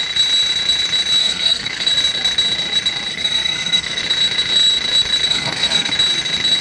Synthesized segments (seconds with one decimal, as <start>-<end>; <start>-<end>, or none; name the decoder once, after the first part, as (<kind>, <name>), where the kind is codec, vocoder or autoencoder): 1.2-1.9 (codec, SNAC); 3.1-4.0; 5.3-5.9